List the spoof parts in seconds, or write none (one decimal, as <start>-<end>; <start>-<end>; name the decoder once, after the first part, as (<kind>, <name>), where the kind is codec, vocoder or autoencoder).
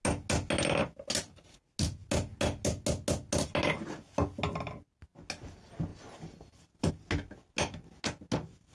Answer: 5.9-6.9 (vocoder, BigVGAN v2)